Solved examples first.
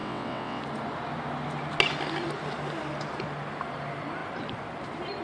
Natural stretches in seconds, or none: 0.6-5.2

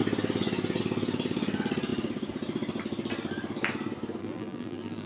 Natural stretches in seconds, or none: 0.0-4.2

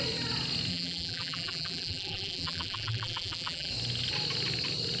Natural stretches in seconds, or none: 0.0-0.7; 3.7-5.0

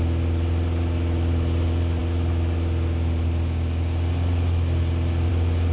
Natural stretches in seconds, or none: 0.0-5.7

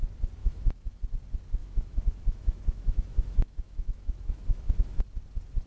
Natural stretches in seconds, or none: 0.0-0.4; 1.0-1.6; 5.0-5.7

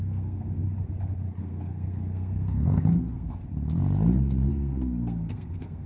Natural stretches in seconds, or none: 0.6-1.4; 3.4-4.5